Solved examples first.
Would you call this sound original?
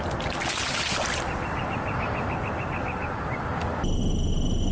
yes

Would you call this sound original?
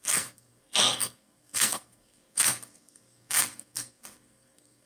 no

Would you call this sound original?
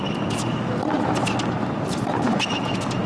yes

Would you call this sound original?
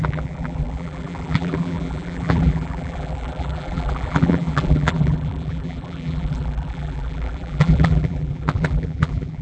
no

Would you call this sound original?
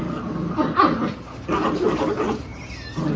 yes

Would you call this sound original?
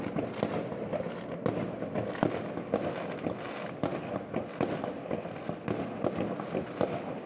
yes